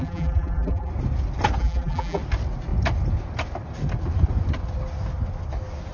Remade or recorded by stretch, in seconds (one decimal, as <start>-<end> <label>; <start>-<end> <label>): 0.0-0.9 remade; 0.9-1.6 recorded; 1.6-2.2 remade; 2.2-5.9 recorded